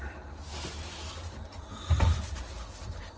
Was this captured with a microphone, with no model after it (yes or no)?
yes